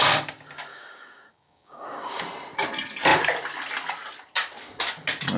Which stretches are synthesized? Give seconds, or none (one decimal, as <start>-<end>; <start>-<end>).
0.7-2.2